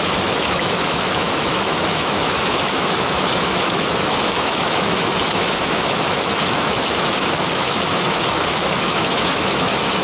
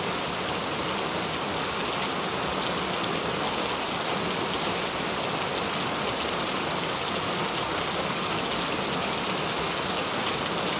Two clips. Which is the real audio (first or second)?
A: second